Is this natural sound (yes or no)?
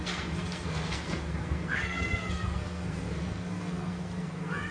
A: no